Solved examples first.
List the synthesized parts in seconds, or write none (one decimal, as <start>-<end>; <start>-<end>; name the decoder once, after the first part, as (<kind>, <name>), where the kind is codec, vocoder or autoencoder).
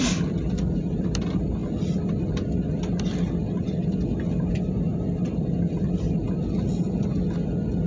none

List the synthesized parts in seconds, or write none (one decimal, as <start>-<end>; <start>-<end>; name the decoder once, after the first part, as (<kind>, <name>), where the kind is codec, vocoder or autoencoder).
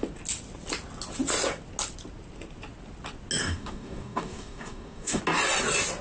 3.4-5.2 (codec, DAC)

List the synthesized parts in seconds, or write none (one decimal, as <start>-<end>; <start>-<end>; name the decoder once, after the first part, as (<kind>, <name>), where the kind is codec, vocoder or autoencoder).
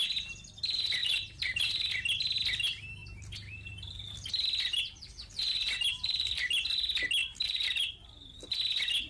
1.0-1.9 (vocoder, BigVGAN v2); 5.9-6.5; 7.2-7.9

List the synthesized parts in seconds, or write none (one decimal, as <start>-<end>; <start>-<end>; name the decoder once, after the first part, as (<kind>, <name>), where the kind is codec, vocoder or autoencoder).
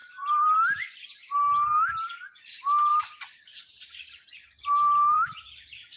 0.0-0.6 (vocoder, BigVGAN v2); 2.9-6.0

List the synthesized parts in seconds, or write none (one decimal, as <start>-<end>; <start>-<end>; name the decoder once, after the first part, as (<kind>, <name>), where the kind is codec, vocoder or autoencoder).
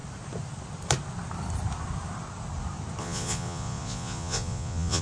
3.0-5.0 (vocoder, Vocos)